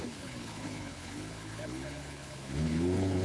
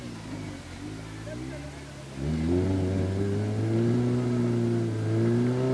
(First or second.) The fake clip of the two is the first